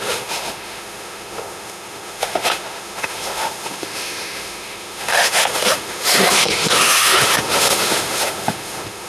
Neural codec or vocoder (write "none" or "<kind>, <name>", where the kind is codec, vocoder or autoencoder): autoencoder, DAC-VAE